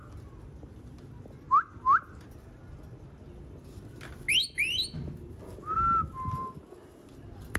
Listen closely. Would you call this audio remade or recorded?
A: recorded